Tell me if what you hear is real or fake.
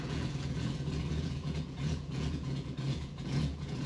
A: fake